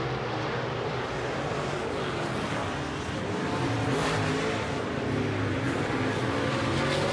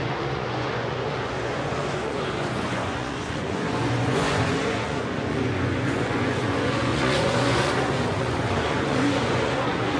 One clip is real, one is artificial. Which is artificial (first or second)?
second